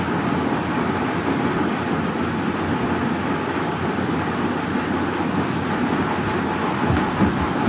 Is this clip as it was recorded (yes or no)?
yes